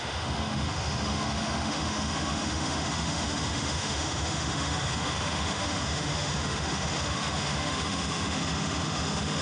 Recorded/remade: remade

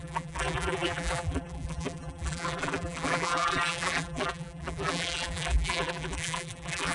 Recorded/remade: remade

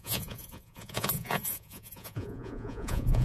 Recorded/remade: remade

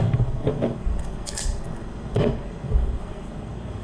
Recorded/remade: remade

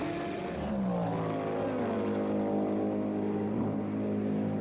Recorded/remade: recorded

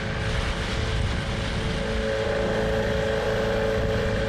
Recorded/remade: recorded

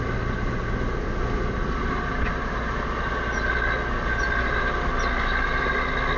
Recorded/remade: recorded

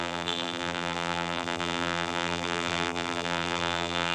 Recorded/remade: remade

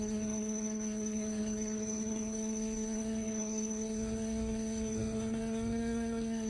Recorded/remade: remade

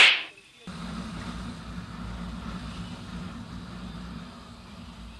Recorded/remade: recorded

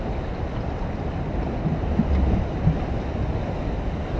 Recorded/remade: recorded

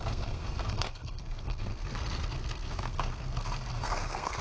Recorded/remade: remade